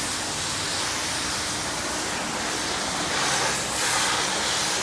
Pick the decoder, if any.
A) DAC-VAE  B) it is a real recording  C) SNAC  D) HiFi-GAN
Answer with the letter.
B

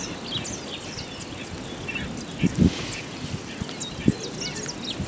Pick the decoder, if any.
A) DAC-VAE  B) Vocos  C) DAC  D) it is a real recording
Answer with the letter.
D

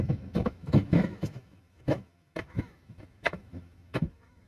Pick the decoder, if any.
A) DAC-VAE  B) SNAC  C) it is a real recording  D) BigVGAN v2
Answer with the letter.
A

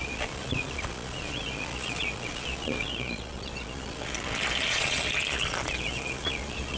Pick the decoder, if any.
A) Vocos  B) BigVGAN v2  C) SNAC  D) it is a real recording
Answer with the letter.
A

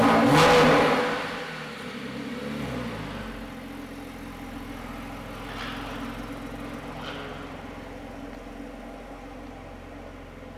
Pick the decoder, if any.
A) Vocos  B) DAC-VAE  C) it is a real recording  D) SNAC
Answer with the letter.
C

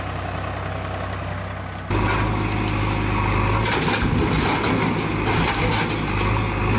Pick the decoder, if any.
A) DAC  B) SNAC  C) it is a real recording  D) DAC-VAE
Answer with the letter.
C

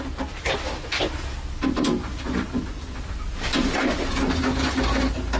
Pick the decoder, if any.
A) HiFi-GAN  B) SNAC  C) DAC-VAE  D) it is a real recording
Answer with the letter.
D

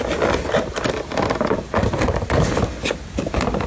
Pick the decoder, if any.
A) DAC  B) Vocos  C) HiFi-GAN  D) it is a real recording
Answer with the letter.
D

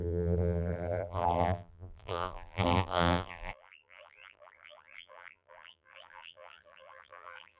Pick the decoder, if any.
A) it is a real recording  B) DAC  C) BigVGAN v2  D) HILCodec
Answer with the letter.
C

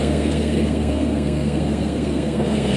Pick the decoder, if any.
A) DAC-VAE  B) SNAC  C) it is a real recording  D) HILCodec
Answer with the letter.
B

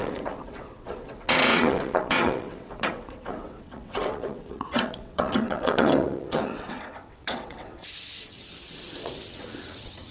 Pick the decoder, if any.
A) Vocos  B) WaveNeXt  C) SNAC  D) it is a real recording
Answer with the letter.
B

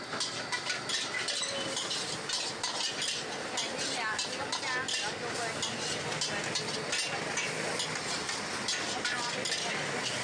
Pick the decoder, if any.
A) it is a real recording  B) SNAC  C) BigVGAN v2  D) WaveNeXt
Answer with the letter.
A